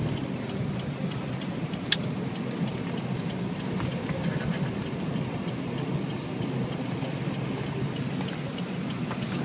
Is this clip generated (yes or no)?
no